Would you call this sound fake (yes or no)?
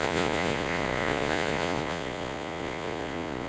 yes